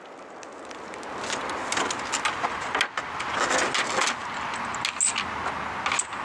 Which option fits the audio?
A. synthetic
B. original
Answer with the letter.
B